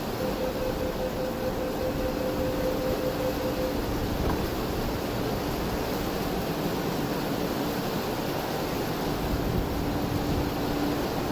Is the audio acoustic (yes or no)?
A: yes